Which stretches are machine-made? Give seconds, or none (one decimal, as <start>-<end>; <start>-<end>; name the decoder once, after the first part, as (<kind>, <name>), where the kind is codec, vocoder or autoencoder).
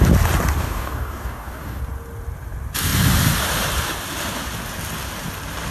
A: 0.6-1.8 (codec, DAC)